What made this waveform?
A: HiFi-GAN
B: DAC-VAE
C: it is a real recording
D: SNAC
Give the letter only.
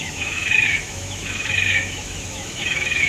B